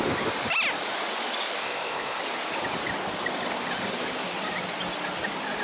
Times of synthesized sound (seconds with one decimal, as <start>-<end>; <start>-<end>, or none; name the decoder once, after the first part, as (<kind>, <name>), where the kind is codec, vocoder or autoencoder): 1.6-2.2 (codec, ZipCodec)